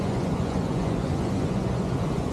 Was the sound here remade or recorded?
remade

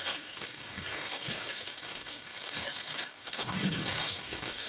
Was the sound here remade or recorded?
remade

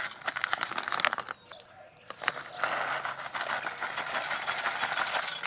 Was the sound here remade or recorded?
recorded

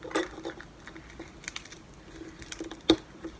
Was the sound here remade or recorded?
recorded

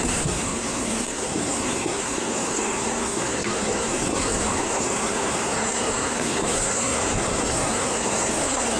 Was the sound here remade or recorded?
remade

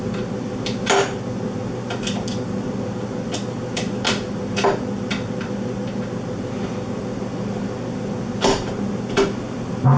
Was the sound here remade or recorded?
recorded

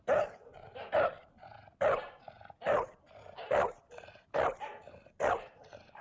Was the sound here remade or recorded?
recorded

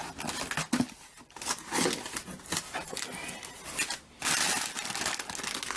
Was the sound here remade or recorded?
recorded